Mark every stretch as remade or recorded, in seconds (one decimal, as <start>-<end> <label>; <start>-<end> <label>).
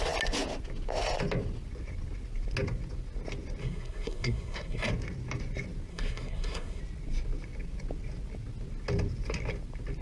0.0-3.6 recorded; 3.6-4.9 remade; 4.9-5.9 recorded; 5.9-6.8 remade; 6.8-10.0 recorded